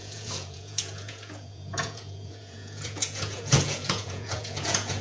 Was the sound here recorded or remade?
remade